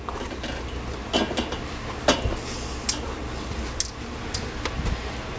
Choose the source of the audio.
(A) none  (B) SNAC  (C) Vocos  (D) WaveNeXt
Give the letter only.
A